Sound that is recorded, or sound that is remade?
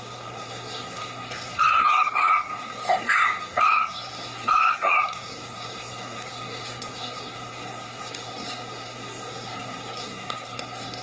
remade